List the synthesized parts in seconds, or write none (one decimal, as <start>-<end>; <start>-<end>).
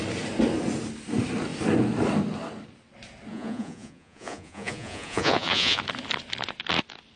3.3-5.8